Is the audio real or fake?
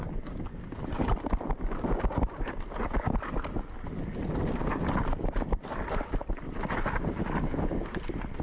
real